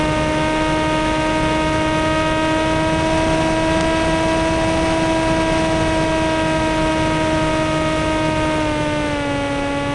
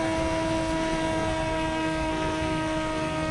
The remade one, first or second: second